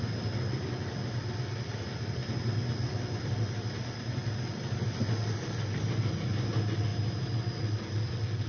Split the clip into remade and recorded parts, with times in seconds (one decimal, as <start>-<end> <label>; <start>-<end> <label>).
0.0-2.2 remade; 2.2-2.9 recorded; 2.9-6.9 remade; 6.9-7.6 recorded; 7.6-8.5 remade